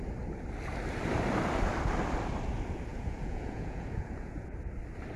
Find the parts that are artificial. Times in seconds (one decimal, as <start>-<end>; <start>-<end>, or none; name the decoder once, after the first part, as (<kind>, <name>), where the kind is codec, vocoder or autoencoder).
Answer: 2.9-4.5 (vocoder, Vocos)